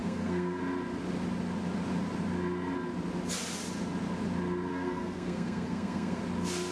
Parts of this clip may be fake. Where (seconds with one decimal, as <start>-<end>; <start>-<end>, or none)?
0.0-0.6; 4.7-6.2